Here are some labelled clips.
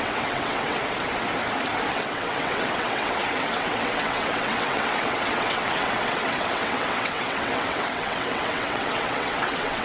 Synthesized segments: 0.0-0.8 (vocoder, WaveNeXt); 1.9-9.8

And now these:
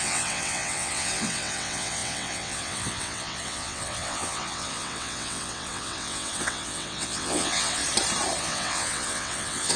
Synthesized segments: 0.0-7.8 (vocoder, WaveNeXt); 8.4-9.8

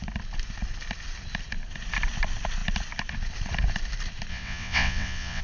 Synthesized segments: 4.3-5.4 (vocoder, WaveNeXt)

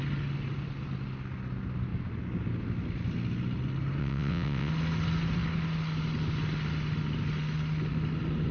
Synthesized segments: 4.0-4.7 (vocoder, WaveNeXt)

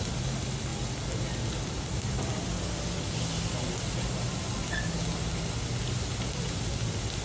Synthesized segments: none

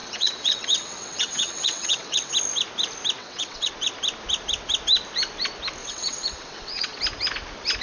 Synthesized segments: 0.0-2.3 (vocoder, WaveNeXt); 3.2-3.7; 5.8-7.0

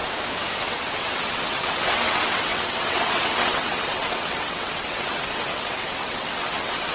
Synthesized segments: 0.6-6.9 (vocoder, WaveNeXt)